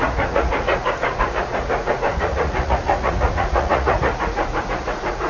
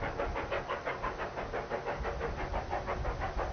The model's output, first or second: first